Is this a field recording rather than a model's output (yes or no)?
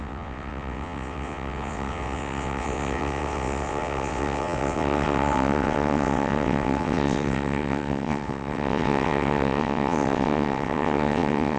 no